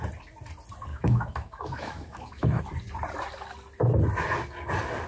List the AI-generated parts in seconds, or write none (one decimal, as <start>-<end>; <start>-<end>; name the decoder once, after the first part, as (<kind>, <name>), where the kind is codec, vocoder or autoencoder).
0.9-2.6 (autoencoder, DAC-VAE)